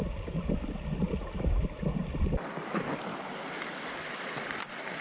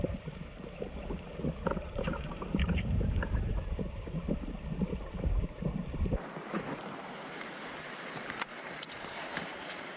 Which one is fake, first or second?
second